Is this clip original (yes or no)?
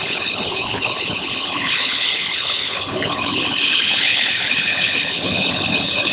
no